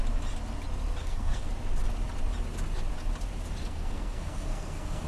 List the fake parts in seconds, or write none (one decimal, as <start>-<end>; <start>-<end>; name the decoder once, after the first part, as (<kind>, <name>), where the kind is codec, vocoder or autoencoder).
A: 1.0-1.5 (codec, SNAC); 3.6-5.1